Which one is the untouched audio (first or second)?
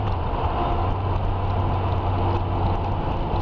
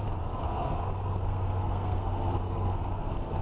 first